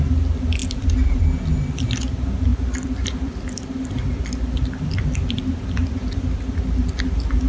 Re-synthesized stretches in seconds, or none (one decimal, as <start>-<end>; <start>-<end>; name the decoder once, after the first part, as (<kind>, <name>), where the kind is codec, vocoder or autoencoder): 0.6-1.2 (vocoder, BigVGAN v2); 2.5-7.0

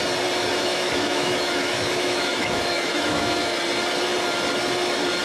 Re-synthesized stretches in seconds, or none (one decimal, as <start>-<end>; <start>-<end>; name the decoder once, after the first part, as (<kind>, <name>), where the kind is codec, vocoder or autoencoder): 0.5-3.6 (autoencoder, DAC-VAE)

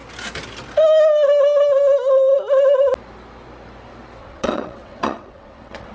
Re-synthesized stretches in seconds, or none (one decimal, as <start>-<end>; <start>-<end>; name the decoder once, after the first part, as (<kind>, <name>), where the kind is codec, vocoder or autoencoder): 4.2-5.9 (vocoder, WaveNeXt)

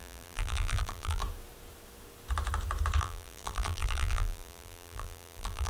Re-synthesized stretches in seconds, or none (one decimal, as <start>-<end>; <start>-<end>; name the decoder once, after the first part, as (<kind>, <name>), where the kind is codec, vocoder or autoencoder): 0.0-1.2 (vocoder, BigVGAN v2); 3.0-5.7